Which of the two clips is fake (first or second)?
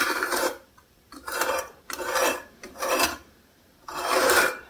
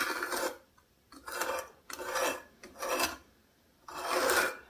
first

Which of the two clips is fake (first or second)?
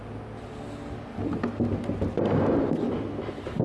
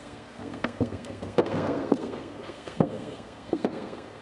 second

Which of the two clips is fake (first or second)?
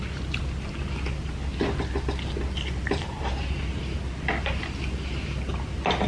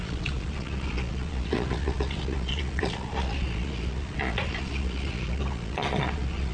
second